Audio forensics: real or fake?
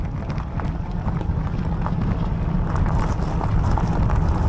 real